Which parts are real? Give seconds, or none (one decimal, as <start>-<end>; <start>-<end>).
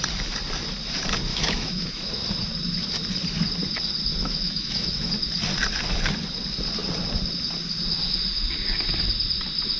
0.0-1.3; 2.1-4.2; 5.1-9.8